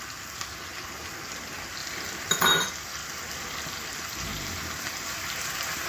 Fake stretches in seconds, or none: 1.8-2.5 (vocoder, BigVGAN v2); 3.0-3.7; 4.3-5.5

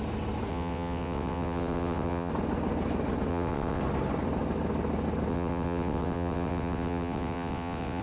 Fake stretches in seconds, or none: 0.5-2.3 (vocoder, WaveNeXt); 3.3-3.8; 5.3-8.0